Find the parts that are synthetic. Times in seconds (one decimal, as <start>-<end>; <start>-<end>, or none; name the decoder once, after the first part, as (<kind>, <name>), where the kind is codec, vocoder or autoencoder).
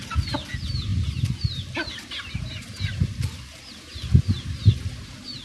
none